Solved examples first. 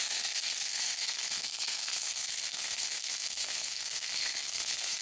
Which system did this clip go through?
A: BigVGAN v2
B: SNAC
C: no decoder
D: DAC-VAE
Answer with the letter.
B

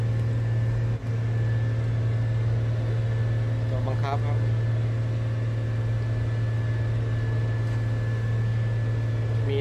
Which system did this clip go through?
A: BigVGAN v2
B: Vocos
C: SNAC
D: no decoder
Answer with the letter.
D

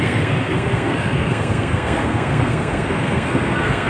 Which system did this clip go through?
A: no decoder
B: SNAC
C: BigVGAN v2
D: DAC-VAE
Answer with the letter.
B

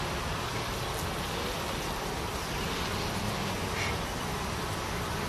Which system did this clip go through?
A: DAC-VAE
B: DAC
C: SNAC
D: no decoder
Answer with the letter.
D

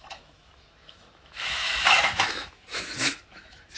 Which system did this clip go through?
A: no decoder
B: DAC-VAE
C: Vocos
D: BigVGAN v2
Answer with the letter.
B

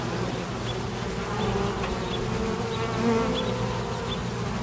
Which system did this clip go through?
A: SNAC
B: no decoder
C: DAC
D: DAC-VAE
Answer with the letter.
B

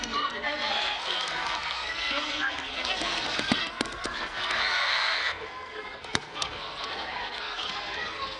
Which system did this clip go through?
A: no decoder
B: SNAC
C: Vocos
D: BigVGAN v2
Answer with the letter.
B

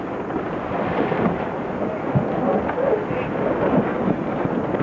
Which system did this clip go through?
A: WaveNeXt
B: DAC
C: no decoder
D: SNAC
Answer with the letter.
C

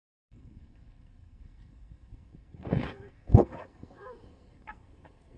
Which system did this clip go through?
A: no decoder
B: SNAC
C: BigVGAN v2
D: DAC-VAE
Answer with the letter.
B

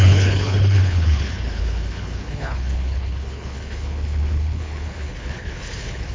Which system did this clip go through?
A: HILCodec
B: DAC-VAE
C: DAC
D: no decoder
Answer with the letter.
A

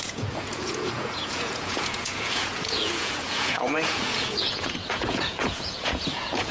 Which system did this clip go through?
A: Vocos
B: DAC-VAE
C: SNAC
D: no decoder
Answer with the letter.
A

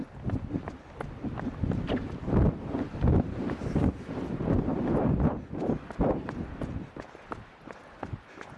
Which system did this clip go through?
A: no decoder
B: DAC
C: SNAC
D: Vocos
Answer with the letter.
A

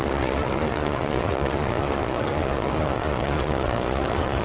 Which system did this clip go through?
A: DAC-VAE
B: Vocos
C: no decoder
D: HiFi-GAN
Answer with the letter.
B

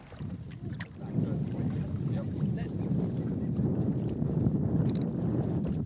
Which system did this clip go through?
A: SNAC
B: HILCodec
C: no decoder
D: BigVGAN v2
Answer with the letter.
C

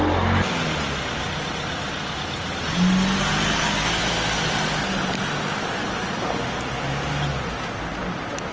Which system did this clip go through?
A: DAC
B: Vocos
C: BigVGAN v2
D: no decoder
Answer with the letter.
D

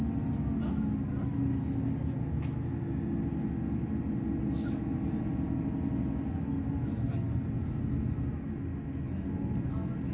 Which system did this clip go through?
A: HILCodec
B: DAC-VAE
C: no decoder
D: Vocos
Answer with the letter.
C